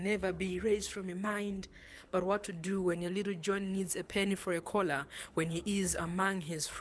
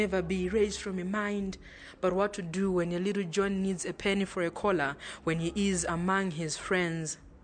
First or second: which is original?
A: second